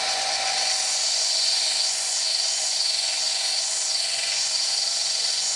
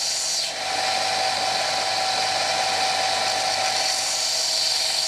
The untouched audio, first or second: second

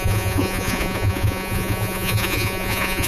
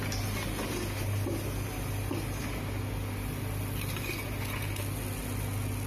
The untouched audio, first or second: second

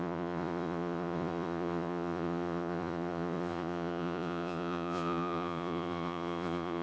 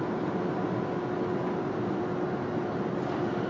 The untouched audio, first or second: second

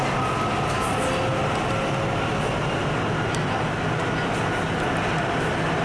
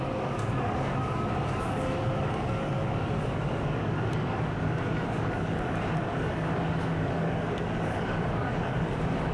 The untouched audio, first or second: first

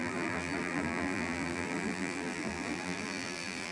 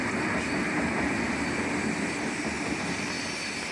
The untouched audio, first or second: second